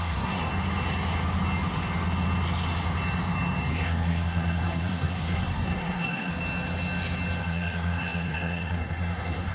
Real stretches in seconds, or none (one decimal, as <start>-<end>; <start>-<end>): 0.5-3.7; 6.3-7.4